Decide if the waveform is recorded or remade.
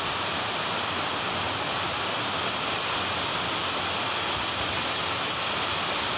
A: recorded